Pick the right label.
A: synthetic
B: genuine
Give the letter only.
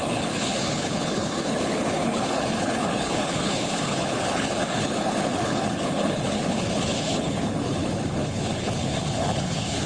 A